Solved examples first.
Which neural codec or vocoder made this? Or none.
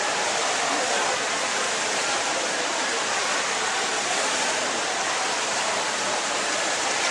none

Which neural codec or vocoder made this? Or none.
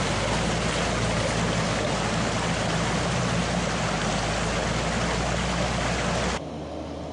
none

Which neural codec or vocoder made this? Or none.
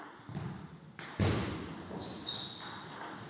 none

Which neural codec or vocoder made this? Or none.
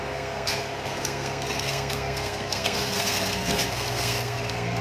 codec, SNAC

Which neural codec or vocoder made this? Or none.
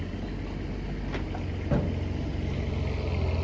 none